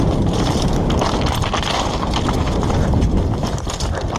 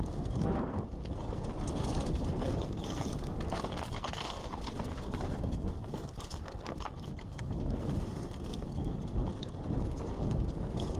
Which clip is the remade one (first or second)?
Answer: second